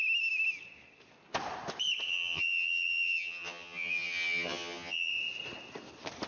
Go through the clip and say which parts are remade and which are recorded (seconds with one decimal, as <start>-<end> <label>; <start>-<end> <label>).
0.0-2.1 recorded; 2.1-5.1 remade; 5.1-6.3 recorded